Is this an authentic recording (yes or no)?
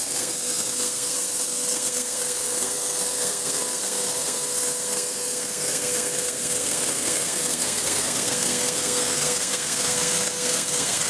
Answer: no